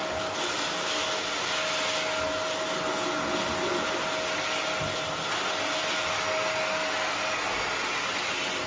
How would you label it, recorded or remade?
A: recorded